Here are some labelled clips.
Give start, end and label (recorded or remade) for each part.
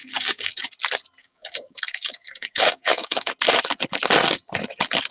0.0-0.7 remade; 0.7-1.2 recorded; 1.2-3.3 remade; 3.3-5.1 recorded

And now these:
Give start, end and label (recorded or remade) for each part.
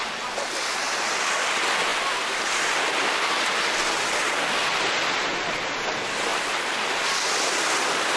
0.0-8.2 recorded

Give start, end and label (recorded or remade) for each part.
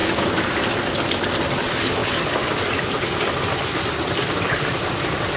0.0-0.8 remade; 0.8-2.0 recorded; 2.0-5.4 remade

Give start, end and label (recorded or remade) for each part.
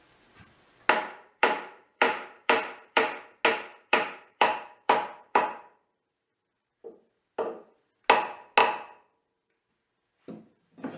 0.0-1.4 recorded; 1.4-3.0 remade; 3.0-3.7 recorded; 3.7-6.7 remade; 6.7-11.0 recorded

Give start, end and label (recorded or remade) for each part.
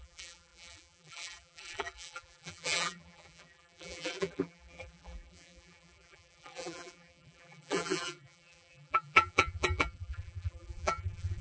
0.0-11.4 remade